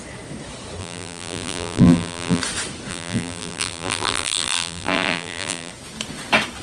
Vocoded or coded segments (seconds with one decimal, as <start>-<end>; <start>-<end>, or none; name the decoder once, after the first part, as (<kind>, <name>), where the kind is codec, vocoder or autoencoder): 0.8-2.4 (vocoder, BigVGAN v2); 2.9-5.7